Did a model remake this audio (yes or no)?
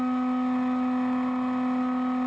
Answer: no